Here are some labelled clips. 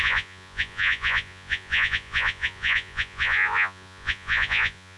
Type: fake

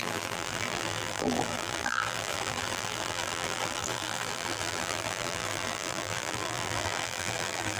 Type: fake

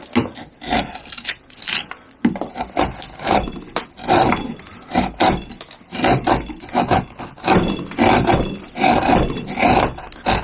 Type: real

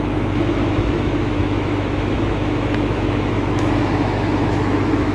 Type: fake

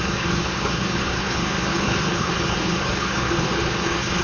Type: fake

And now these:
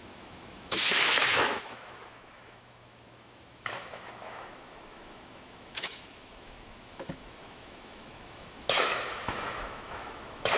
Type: fake